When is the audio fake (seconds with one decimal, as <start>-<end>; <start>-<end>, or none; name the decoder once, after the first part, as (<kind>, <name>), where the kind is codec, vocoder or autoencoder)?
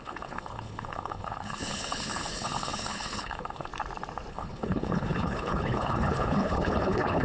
0.0-3.7 (codec, HILCodec); 4.3-7.2